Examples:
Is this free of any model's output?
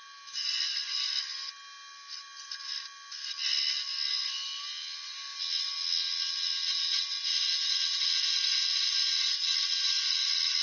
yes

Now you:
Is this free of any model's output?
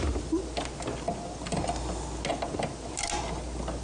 yes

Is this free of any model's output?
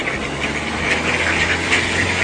yes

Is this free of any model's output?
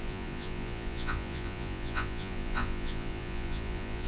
no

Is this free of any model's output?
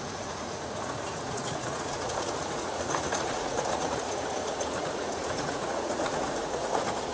no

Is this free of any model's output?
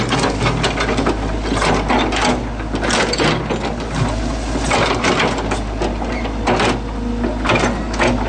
yes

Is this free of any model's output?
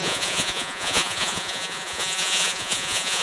no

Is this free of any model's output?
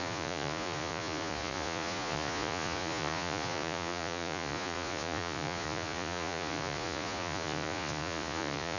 no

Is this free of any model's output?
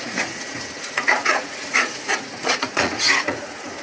no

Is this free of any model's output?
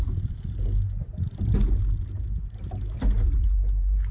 yes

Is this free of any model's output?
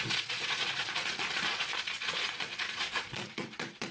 no